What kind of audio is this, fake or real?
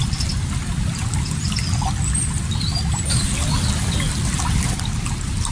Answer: real